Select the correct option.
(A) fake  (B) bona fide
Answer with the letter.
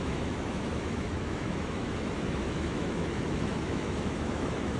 A